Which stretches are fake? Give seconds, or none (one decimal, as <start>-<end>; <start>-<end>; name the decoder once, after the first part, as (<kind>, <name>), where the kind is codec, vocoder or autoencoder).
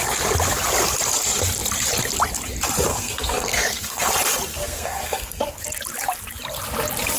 2.9-4.1 (codec, SNAC); 4.5-5.6